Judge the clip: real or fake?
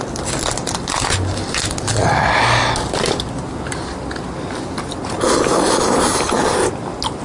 real